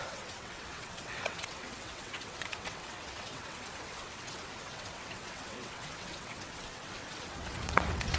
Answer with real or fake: fake